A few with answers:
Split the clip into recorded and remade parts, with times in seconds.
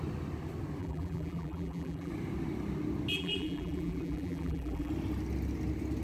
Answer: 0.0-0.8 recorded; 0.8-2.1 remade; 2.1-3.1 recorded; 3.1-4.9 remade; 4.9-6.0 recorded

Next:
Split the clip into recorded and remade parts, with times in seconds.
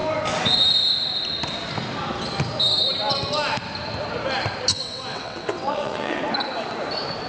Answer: 0.0-4.7 recorded; 4.7-6.2 remade; 6.2-7.3 recorded